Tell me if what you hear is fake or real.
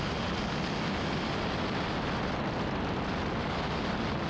real